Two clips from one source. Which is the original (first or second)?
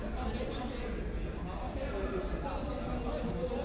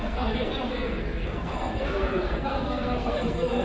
first